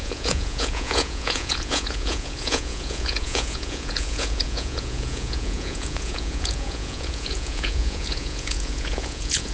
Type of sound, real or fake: fake